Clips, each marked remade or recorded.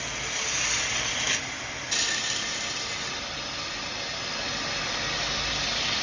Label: recorded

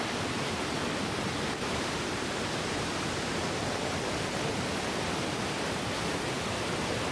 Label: recorded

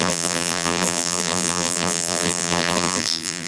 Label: remade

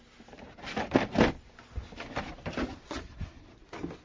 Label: recorded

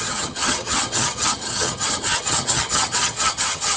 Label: remade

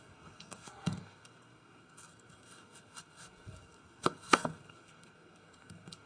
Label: remade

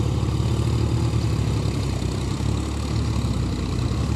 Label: recorded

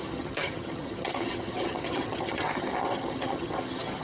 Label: remade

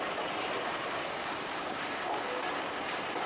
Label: recorded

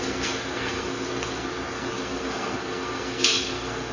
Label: remade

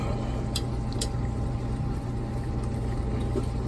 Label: recorded